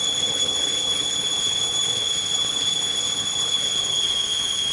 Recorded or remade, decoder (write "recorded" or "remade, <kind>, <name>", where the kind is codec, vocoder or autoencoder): remade, codec, HILCodec